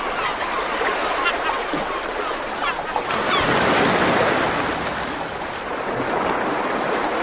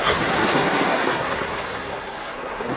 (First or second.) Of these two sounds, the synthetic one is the second